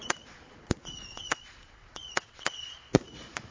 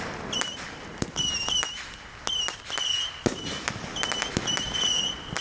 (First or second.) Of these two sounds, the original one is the second